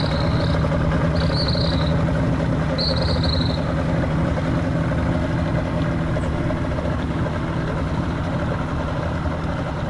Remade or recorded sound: recorded